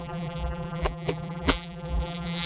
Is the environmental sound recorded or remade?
remade